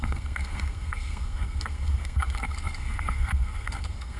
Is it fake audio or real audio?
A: fake